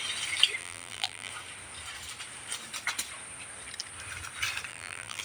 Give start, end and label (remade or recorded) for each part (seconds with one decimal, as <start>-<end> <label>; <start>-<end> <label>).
0.0-0.6 recorded; 0.6-1.3 remade; 1.3-4.7 recorded; 4.7-5.2 remade